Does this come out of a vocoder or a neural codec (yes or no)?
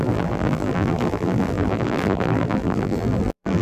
yes